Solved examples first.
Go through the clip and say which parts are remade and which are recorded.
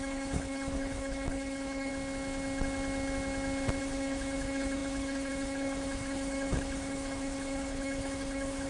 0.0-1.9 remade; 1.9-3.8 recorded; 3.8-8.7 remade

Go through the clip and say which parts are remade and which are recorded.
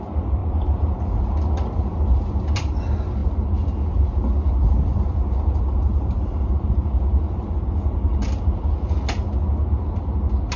0.0-0.4 recorded; 0.4-1.3 remade; 1.3-5.9 recorded; 5.9-7.1 remade; 7.1-10.6 recorded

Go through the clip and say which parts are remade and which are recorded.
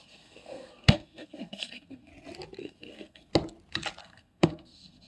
0.0-2.1 remade; 2.1-2.6 recorded; 2.6-3.3 remade; 3.3-4.0 recorded; 4.0-5.1 remade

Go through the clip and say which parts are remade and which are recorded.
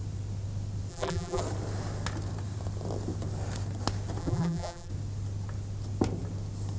0.0-0.9 recorded; 0.9-1.4 remade; 1.4-4.2 recorded; 4.2-4.9 remade; 4.9-6.8 recorded